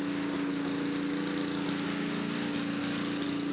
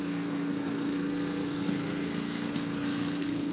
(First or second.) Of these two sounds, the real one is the first